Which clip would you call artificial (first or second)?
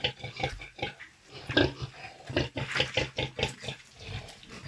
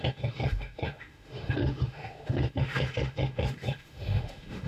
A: second